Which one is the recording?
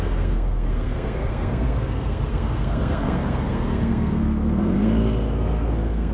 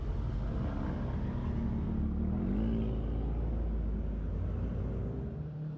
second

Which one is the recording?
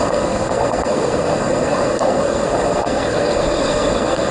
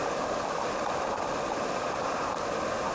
second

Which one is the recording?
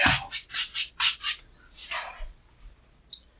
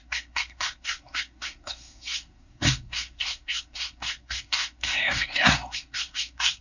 first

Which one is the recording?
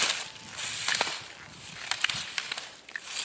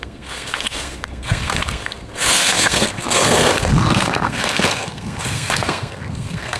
first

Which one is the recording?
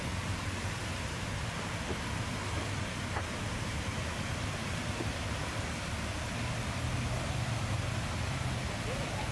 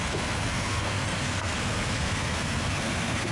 first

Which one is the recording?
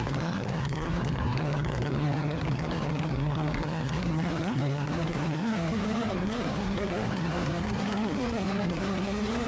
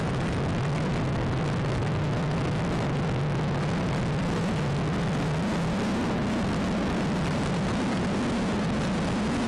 second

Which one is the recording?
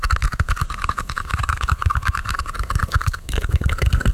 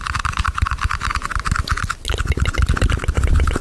second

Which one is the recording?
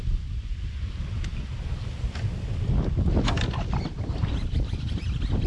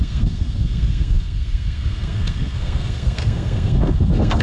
first